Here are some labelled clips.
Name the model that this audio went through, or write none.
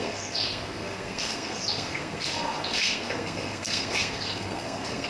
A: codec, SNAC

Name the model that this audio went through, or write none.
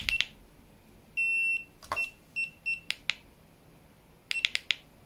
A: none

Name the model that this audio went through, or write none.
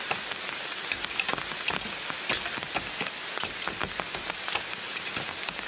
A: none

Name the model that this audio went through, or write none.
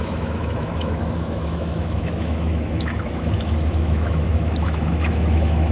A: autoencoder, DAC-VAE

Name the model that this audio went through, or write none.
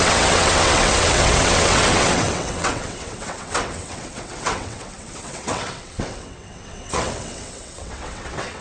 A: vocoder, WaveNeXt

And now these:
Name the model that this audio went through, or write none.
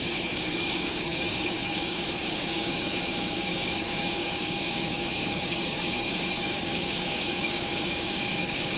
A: codec, DAC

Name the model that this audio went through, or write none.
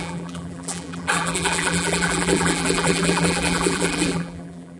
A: vocoder, BigVGAN v2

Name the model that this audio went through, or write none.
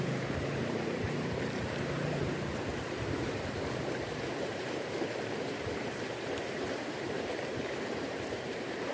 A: vocoder, BigVGAN v2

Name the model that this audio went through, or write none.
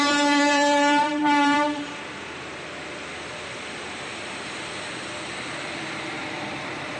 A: vocoder, BigVGAN v2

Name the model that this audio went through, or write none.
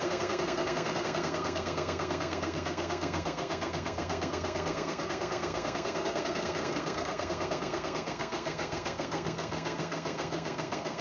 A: codec, SNAC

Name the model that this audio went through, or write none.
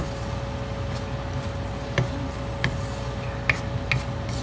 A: none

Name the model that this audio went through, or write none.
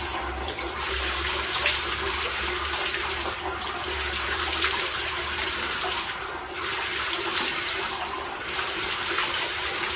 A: vocoder, BigVGAN v2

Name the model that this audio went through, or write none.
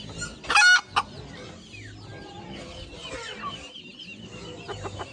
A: none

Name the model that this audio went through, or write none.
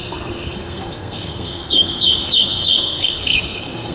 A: codec, SNAC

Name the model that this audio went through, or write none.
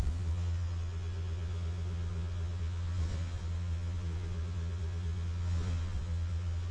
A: vocoder, Vocos